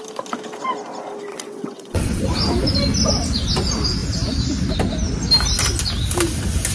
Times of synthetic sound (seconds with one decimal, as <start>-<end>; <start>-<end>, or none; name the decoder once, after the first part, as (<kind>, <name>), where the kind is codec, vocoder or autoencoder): 1.3-2.2 (vocoder, WaveNeXt)